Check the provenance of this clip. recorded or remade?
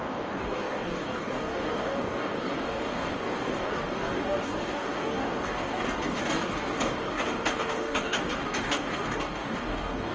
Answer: remade